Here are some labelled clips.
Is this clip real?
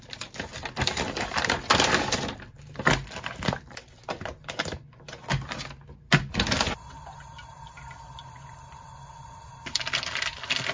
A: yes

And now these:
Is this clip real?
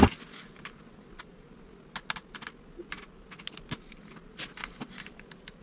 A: yes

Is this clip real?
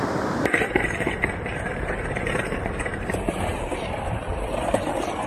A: no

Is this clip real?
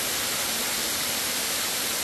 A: yes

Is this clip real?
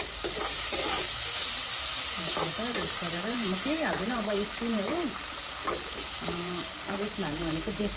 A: no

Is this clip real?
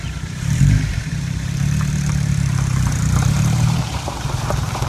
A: no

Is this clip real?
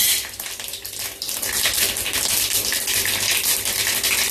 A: yes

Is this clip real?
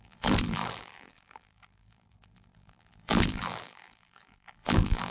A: no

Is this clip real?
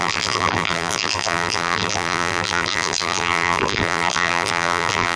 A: no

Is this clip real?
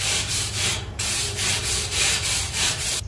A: no